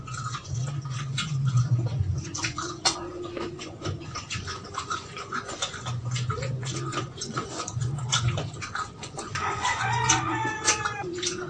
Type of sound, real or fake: fake